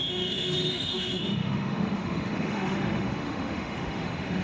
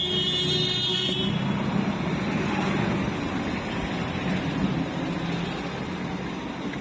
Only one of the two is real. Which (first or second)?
second